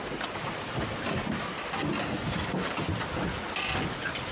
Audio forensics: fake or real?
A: real